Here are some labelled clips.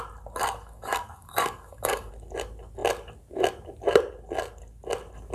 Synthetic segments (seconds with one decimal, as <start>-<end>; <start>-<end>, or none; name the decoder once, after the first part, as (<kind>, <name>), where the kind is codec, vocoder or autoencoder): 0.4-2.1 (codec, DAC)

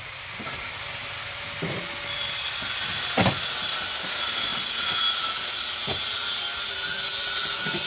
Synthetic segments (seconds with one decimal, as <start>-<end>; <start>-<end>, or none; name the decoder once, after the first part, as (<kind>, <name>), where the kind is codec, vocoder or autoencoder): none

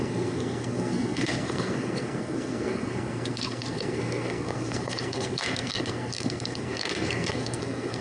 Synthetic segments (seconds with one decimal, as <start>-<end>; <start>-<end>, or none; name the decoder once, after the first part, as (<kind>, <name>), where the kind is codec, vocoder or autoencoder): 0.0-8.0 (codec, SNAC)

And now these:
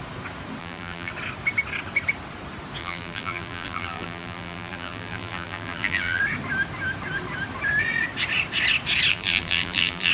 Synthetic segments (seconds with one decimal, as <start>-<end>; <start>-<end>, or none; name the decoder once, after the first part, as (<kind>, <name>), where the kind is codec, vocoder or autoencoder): 0.6-1.1 (vocoder, BigVGAN v2); 2.8-6.2; 9.1-10.1

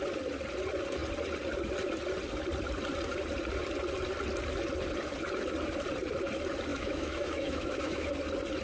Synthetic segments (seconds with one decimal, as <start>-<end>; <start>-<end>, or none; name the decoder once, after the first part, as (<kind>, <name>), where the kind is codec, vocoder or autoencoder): 6.7-8.1 (autoencoder, DAC-VAE)

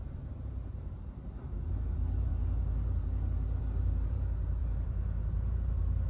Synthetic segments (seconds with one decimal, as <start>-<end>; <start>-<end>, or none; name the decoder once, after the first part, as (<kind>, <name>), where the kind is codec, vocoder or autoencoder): 0.0-2.3 (vocoder, BigVGAN v2); 3.6-6.1

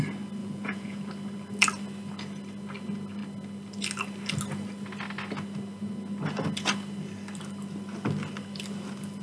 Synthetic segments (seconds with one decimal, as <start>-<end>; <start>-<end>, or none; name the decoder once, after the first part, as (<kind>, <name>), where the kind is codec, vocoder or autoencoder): 0.4-1.0 (vocoder, Vocos)

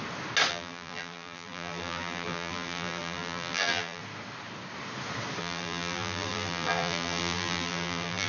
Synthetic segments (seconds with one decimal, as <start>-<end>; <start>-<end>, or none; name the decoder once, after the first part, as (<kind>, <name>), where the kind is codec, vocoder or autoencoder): 0.5-4.0 (vocoder, BigVGAN v2); 5.4-8.3